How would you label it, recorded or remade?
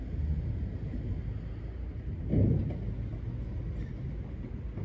recorded